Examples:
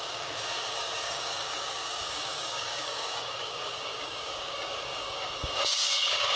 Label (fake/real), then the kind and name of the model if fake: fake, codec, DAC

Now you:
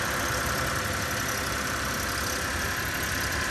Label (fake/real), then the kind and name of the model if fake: real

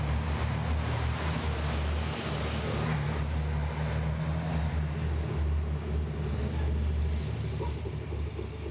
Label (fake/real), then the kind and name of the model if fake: real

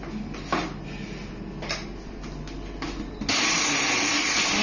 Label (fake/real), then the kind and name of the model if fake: real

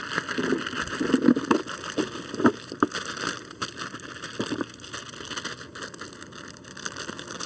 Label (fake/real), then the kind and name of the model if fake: real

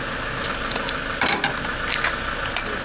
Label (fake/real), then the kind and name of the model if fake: real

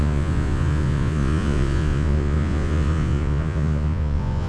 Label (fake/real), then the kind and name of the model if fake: fake, vocoder, Vocos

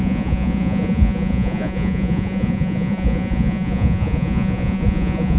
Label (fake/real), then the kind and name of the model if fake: fake, vocoder, Vocos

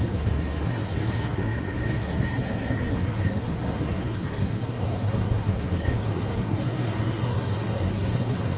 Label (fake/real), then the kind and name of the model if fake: fake, codec, SNAC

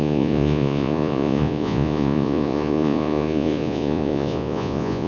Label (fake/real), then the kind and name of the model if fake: fake, vocoder, Vocos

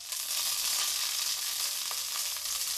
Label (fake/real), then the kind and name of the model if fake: real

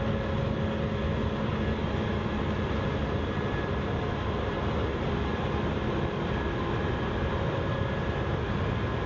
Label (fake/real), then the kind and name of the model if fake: real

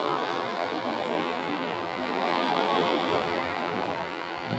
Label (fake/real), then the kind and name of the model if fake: fake, vocoder, BigVGAN v2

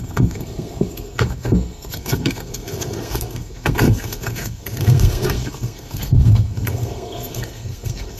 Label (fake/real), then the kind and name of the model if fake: fake, codec, SNAC